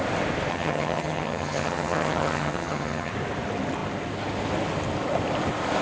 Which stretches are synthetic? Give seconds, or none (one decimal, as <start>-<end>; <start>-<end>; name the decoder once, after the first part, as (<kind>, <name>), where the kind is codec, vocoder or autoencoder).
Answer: 0.5-3.1 (vocoder, HiFi-GAN)